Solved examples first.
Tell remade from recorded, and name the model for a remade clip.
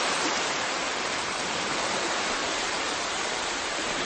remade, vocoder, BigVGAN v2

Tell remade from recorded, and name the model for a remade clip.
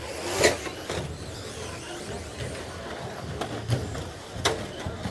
recorded